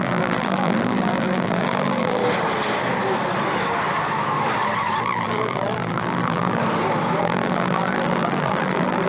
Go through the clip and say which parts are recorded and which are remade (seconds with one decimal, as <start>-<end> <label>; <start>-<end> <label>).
0.0-2.2 remade; 2.2-5.0 recorded; 5.0-6.6 remade; 6.6-7.2 recorded; 7.2-9.1 remade